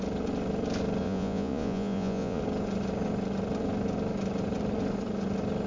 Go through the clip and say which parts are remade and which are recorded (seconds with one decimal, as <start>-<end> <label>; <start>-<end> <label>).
0.0-1.0 recorded; 1.0-2.4 remade; 2.4-5.7 recorded